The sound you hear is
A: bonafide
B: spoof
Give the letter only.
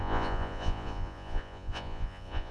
B